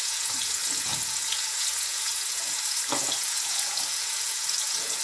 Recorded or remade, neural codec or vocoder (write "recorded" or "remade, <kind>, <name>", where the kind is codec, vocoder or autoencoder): remade, vocoder, Vocos